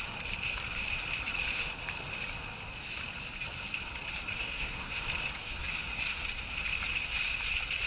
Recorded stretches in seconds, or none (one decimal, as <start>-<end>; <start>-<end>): 0.0-4.4; 5.0-7.9